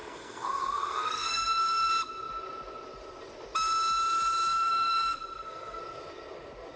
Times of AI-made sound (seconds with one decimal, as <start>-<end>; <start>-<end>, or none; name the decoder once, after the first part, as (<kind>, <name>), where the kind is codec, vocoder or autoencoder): 0.0-1.9 (codec, SNAC); 4.5-5.8